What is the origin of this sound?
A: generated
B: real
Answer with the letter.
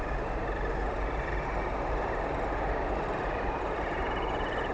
A